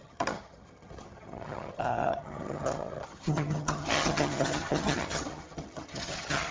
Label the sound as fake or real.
fake